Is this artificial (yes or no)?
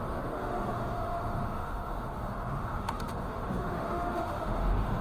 yes